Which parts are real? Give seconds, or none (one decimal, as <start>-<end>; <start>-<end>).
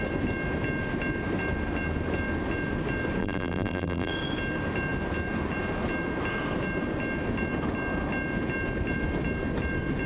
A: 0.0-3.2; 4.1-10.1